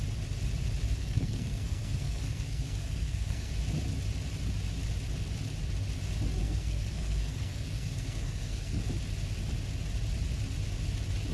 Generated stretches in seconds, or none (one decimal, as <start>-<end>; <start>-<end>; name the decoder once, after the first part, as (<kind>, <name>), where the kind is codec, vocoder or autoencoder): 1.0-3.5 (codec, SNAC); 6.4-8.8